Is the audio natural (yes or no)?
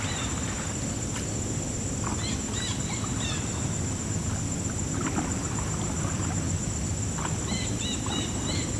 yes